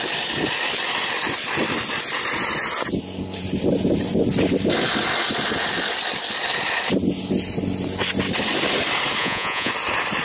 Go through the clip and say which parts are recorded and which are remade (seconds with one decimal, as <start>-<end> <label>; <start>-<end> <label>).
0.0-9.2 recorded; 9.2-9.7 remade; 9.7-10.2 recorded